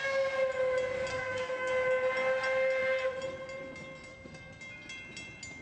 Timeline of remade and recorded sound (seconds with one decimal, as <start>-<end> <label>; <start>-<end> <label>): 0.0-1.1 recorded; 1.1-1.7 remade; 1.7-4.1 recorded; 4.1-4.6 remade; 4.6-5.6 recorded